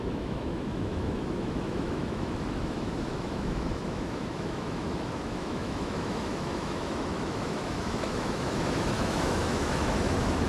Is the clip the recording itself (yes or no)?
no